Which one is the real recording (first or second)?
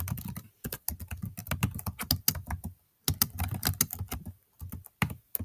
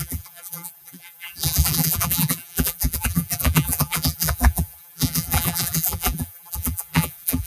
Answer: first